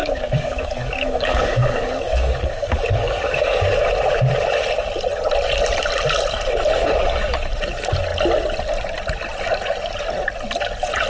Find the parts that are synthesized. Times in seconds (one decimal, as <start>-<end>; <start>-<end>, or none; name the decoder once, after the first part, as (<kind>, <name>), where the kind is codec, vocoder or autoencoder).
0.0-3.6 (codec, DAC)